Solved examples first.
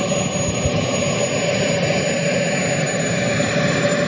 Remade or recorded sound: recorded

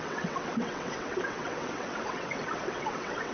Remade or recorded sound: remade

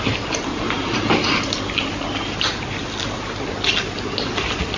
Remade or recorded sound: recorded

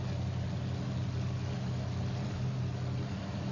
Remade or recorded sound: recorded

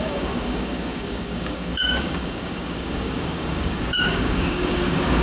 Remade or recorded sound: remade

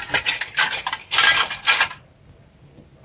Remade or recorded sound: recorded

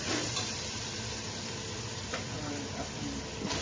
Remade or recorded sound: remade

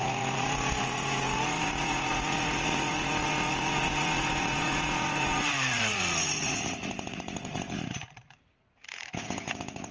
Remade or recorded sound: remade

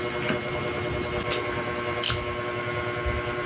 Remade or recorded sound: recorded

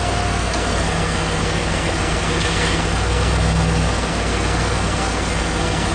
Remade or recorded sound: remade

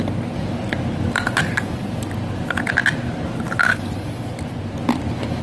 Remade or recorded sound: recorded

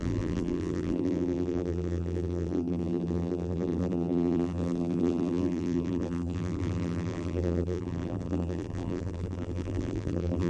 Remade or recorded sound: remade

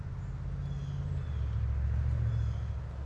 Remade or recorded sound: recorded